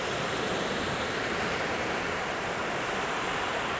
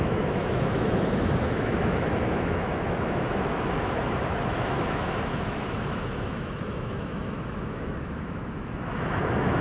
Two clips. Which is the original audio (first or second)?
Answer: first